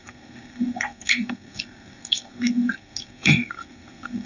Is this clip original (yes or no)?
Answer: no